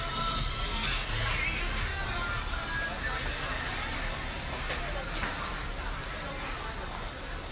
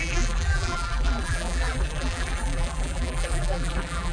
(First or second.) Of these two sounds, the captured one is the first